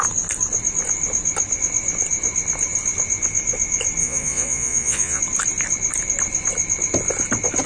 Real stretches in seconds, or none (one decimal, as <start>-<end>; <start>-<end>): 0.0-4.0; 5.2-7.7